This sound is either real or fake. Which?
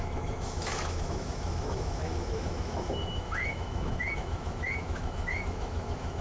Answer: fake